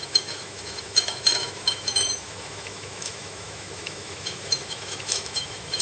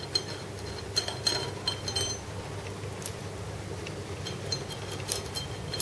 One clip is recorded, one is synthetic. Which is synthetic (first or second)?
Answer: first